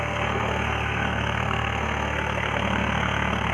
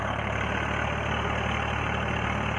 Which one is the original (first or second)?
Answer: second